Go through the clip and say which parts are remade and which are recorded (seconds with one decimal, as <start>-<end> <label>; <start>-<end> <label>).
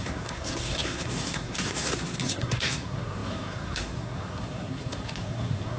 0.0-5.8 remade